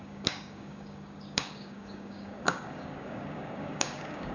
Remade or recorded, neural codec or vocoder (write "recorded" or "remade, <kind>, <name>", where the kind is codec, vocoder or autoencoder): remade, codec, DAC